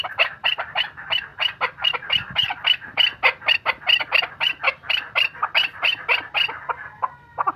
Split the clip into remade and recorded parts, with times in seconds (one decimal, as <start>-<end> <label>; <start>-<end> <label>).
0.0-3.1 remade; 3.1-4.1 recorded; 4.1-5.9 remade; 5.9-6.7 recorded; 6.7-7.6 remade